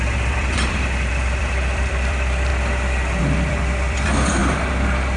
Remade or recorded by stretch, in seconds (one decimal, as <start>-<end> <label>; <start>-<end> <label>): 0.0-2.5 remade; 2.5-3.2 recorded; 3.2-4.4 remade; 4.4-5.2 recorded